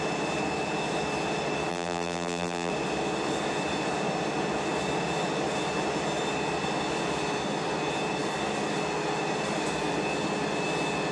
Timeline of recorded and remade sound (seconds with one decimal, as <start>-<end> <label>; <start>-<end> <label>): 0.0-1.7 recorded; 1.7-2.7 remade; 2.7-11.1 recorded